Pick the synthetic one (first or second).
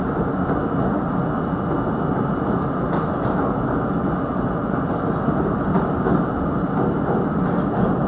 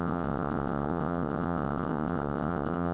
second